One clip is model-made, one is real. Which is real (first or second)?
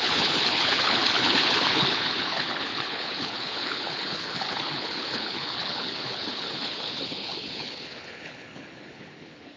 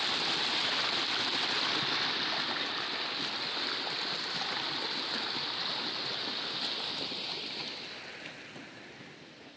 second